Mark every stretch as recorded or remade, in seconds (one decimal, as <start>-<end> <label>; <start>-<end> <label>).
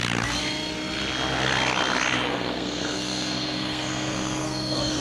0.0-2.3 recorded; 2.3-5.0 remade